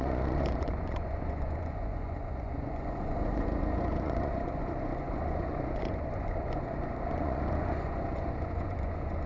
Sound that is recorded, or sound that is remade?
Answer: remade